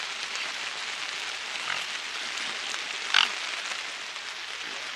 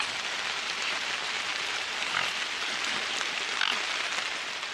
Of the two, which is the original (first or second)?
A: first